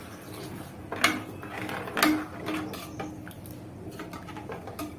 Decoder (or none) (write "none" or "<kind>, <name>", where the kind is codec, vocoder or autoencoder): none